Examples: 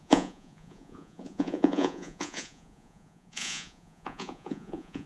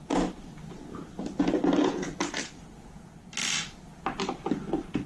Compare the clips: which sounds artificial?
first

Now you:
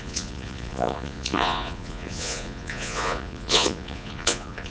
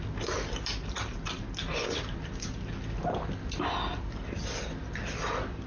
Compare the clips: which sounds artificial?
first